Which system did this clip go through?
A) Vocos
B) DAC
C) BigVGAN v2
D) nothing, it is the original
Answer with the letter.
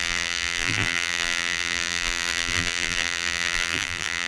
C